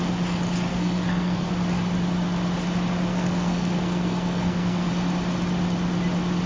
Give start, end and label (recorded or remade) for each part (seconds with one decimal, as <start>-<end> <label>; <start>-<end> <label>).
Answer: 0.0-0.7 recorded; 0.7-1.5 remade; 1.5-3.1 recorded; 3.1-4.9 remade; 4.9-6.5 recorded